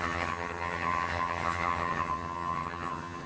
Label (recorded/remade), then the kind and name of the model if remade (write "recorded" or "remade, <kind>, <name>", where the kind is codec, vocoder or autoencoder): remade, vocoder, HiFi-GAN